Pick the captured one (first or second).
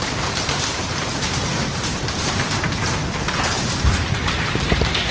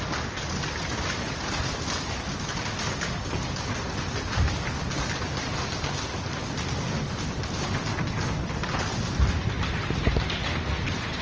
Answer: second